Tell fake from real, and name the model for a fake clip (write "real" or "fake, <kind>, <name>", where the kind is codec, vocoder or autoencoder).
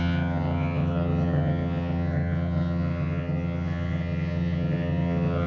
fake, vocoder, HiFi-GAN